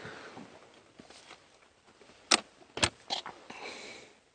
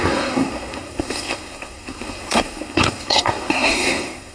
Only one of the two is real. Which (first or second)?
first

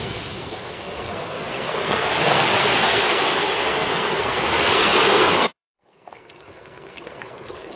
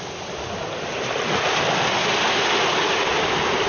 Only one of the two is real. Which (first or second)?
second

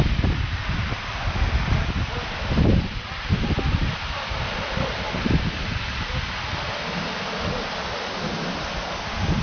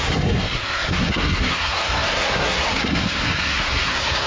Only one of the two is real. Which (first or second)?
first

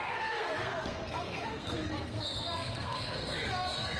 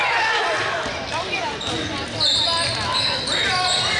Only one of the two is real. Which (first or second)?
second